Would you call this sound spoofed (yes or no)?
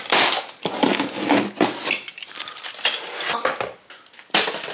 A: no